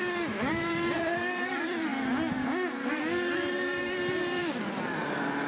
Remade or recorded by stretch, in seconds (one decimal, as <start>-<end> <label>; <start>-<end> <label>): 0.0-1.9 remade; 1.9-3.8 recorded; 3.8-4.4 remade; 4.4-5.5 recorded